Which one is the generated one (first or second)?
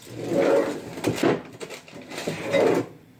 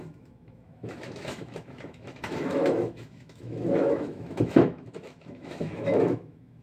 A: second